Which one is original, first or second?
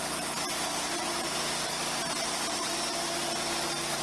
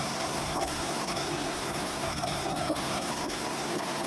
first